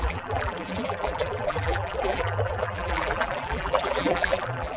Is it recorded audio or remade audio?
remade